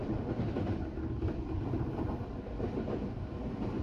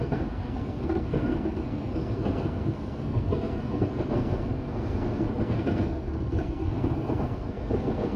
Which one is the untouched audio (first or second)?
first